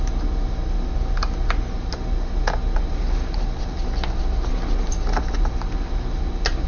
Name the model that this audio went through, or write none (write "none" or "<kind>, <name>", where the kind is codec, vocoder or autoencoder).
none